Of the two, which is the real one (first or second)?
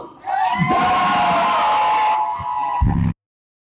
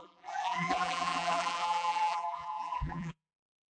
first